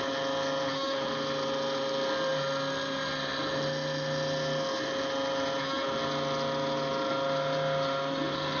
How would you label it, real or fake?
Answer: real